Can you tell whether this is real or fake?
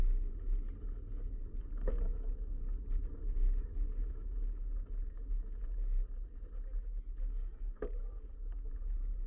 real